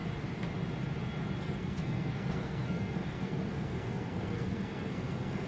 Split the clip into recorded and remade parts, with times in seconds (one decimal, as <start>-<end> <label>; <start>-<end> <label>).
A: 0.0-1.4 recorded; 1.4-5.5 remade